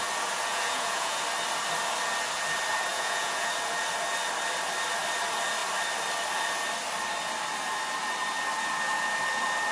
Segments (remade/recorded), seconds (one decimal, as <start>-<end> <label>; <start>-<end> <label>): 0.0-0.5 recorded; 0.5-1.2 remade; 1.2-2.9 recorded; 2.9-3.5 remade; 3.5-9.7 recorded